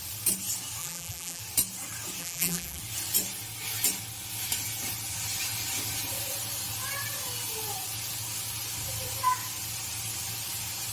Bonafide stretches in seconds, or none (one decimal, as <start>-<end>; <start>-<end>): 0.0-0.8; 1.4-2.2; 2.8-10.9